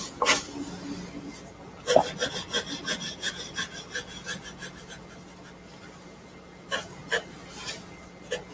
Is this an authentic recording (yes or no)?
yes